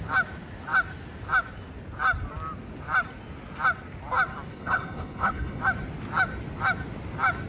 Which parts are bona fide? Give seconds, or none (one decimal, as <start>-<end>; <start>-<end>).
0.0-4.5; 5.6-7.5